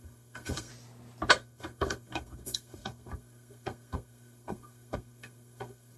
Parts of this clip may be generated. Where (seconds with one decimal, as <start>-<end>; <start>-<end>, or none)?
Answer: 0.0-0.7; 1.3-6.0